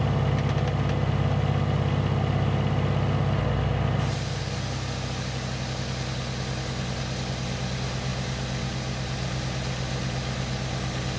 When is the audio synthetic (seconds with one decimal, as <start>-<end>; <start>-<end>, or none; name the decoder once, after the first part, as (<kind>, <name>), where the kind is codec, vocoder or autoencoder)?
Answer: none